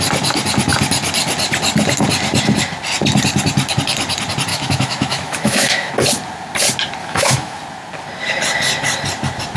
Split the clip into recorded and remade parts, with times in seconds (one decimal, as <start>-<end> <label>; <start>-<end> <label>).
0.0-4.5 recorded; 4.5-5.9 remade; 5.9-7.0 recorded; 7.0-7.6 remade; 7.6-9.6 recorded